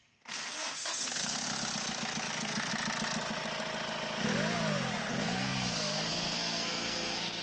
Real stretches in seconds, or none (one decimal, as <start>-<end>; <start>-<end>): 1.5-2.3; 2.7-5.1